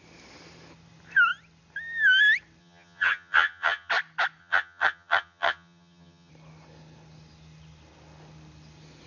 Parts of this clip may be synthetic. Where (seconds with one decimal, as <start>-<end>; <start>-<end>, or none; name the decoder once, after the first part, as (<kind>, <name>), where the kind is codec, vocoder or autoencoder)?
2.6-3.9 (vocoder, HiFi-GAN); 4.4-6.3